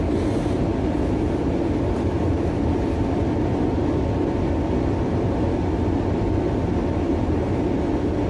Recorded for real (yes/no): yes